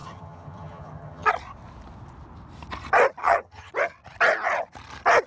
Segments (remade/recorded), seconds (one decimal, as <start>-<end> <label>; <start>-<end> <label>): 0.0-1.3 remade; 1.3-3.2 recorded; 3.2-3.7 remade; 3.7-5.3 recorded